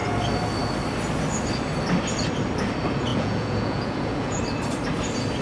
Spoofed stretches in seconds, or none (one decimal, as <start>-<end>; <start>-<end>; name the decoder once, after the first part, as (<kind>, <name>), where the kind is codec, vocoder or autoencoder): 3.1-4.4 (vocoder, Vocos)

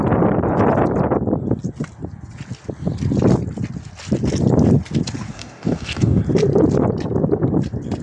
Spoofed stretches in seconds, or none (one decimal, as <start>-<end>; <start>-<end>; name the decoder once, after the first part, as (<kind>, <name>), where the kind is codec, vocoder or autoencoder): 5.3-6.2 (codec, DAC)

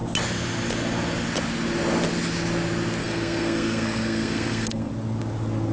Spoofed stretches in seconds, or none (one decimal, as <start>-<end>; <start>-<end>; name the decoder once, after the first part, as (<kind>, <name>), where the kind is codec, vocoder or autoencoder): 3.0-4.9 (codec, SNAC)

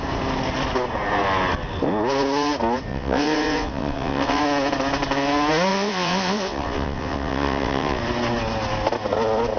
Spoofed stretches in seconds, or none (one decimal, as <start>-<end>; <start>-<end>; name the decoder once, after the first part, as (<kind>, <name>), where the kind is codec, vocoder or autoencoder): 2.9-4.4 (vocoder, WaveNeXt); 5.7-8.0